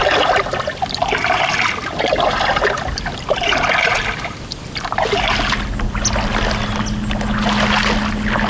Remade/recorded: recorded